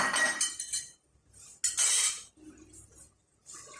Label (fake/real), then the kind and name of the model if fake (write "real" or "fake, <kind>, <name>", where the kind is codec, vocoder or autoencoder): real